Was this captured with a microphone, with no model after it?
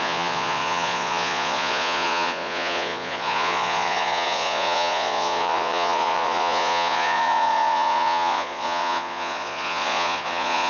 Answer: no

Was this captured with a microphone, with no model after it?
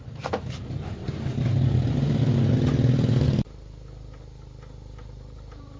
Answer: yes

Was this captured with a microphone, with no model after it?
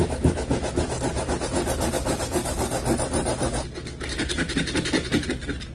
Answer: yes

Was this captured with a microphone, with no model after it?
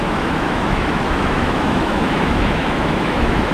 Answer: no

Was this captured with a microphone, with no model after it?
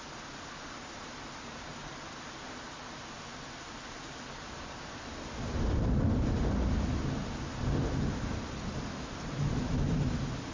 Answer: yes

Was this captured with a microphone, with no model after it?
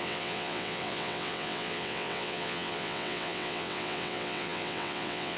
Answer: no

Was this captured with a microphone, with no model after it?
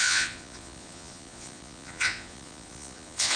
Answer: no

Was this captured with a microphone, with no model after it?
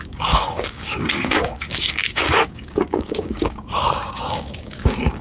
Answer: no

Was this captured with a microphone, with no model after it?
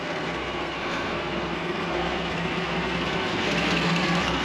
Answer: no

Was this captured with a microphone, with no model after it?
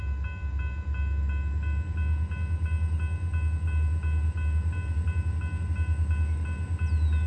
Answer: yes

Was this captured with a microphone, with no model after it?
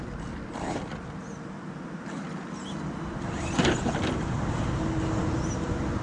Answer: yes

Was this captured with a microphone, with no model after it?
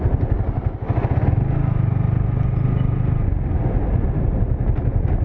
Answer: yes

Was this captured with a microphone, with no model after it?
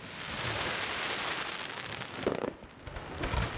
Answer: yes